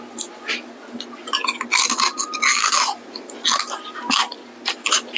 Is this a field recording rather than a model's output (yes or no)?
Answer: yes